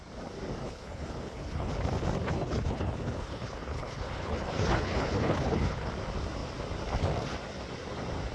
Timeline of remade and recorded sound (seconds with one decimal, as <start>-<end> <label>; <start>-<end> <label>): 0.0-0.6 recorded; 0.6-1.7 remade; 1.7-2.2 recorded; 2.2-5.9 remade; 5.9-8.3 recorded